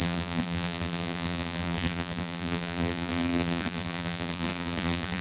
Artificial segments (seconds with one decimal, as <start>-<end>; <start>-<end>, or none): 0.0-5.2